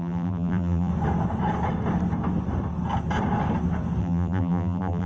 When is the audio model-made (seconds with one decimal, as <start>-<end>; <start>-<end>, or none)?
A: 0.0-0.9; 4.0-5.1